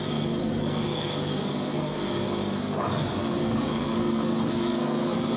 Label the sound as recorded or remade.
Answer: remade